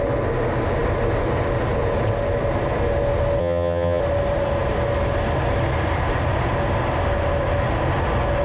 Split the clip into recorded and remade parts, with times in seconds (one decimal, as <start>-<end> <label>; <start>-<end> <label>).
0.0-3.4 recorded; 3.4-4.0 remade; 4.0-8.4 recorded